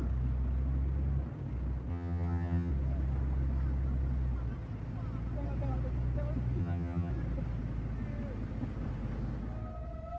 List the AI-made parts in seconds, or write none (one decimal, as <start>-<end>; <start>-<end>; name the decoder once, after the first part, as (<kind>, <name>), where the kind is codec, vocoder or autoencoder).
1.9-2.7 (vocoder, HiFi-GAN); 6.6-7.1